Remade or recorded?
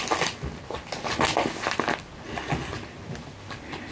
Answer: recorded